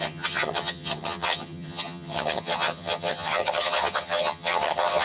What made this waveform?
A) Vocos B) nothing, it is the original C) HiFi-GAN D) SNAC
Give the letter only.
C